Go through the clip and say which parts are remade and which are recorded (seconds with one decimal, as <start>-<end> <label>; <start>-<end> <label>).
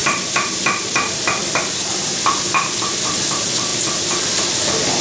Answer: 0.0-0.5 remade; 0.5-1.4 recorded; 1.4-2.9 remade; 2.9-5.0 recorded